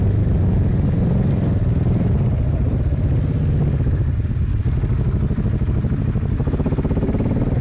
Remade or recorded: recorded